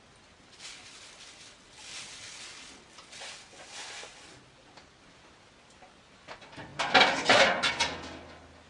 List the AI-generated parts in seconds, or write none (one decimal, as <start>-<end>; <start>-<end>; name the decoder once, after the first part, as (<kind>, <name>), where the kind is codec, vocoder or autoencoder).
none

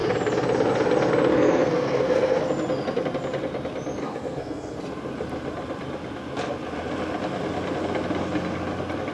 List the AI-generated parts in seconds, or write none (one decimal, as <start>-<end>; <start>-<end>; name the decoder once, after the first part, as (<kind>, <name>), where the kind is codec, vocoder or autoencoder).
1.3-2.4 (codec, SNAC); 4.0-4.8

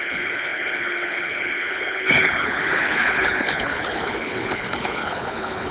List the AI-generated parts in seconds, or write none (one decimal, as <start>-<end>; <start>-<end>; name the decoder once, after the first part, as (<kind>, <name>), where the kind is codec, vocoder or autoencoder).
0.0-5.7 (codec, HILCodec)

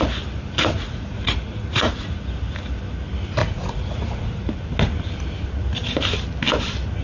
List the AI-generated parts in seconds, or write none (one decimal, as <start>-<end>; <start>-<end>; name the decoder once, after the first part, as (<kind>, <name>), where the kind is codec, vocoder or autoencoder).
0.7-2.1 (vocoder, Vocos); 3.4-4.5

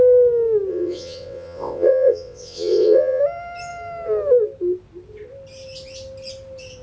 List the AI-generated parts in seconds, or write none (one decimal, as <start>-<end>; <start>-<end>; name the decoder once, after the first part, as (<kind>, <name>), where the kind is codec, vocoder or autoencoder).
0.7-3.2 (vocoder, WaveNeXt)